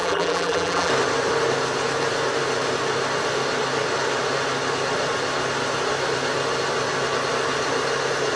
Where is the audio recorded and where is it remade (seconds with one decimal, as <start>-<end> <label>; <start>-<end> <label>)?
0.0-0.9 remade; 0.9-8.4 recorded

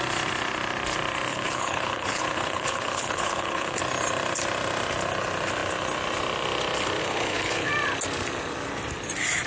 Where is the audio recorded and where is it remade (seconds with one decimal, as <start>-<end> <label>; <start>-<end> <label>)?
0.0-1.3 recorded; 1.3-3.8 remade; 3.8-7.0 recorded; 7.0-7.7 remade; 7.7-9.5 recorded

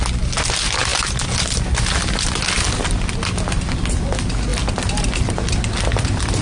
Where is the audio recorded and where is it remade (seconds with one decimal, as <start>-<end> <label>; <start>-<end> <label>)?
0.0-6.4 recorded

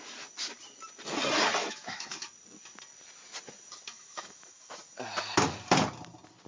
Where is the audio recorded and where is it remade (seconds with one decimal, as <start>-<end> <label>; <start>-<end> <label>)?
0.0-1.6 recorded; 1.6-2.3 remade; 2.3-3.9 recorded; 3.9-4.7 remade; 4.7-6.5 recorded

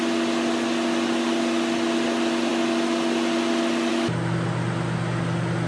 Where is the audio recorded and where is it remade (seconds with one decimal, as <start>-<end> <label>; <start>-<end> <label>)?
0.0-5.7 recorded

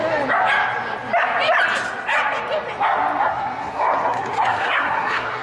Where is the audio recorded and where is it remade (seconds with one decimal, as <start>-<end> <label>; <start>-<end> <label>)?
0.0-3.2 recorded; 3.2-5.4 remade

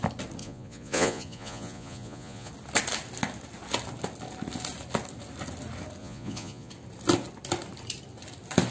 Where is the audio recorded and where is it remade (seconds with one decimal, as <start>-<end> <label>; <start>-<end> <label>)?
0.0-0.4 recorded; 0.4-2.5 remade; 2.5-6.0 recorded; 6.0-6.7 remade; 6.7-8.7 recorded